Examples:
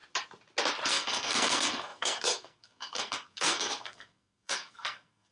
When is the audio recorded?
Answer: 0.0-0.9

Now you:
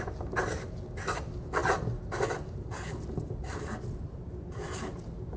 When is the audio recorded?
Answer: 0.0-5.4

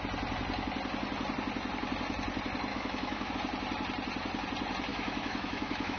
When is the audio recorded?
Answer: 0.0-2.7; 3.3-4.9